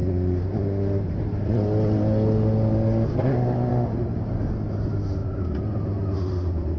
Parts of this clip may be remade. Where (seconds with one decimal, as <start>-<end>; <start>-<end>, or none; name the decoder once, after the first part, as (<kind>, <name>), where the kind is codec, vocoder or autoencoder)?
5.2-6.8 (vocoder, BigVGAN v2)